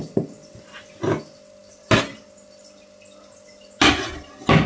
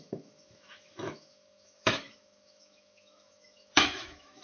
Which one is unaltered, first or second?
first